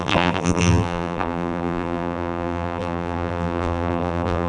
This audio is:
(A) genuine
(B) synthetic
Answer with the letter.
B